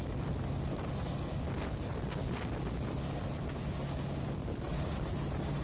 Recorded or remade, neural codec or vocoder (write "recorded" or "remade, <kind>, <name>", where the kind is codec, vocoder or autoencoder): recorded